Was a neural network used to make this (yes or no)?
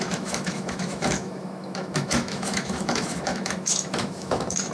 yes